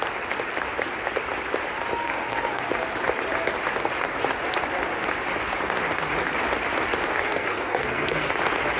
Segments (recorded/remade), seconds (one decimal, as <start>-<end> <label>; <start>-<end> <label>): 0.0-2.0 recorded; 2.0-2.6 remade; 2.6-7.2 recorded; 7.2-8.3 remade; 8.3-8.8 recorded